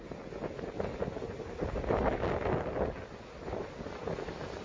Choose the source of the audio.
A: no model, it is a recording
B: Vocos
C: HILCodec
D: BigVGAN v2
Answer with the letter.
A